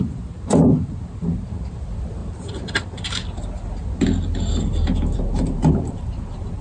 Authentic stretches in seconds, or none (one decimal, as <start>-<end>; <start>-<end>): 3.2-4.5